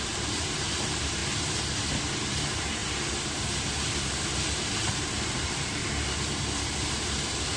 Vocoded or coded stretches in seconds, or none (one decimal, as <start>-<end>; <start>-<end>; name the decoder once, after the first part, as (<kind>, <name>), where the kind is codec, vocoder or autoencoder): 0.0-5.8 (vocoder, BigVGAN v2); 6.9-7.6